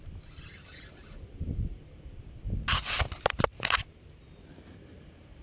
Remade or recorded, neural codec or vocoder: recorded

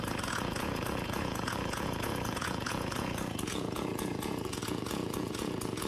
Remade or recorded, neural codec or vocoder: remade, vocoder, Vocos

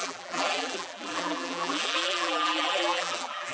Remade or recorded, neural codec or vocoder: remade, vocoder, BigVGAN v2